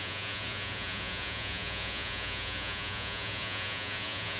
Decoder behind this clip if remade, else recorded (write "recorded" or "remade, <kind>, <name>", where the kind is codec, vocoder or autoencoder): remade, vocoder, Vocos